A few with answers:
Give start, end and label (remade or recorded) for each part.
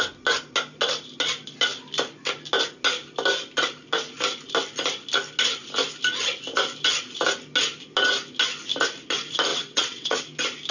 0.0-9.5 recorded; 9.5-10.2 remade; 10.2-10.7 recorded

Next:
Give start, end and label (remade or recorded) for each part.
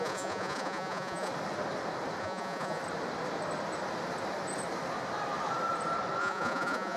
0.0-1.3 remade; 1.3-2.2 recorded; 2.2-2.8 remade; 2.8-6.2 recorded; 6.2-7.0 remade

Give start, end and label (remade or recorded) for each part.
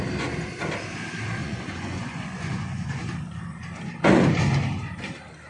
0.0-1.4 recorded; 1.4-3.0 remade; 3.0-5.5 recorded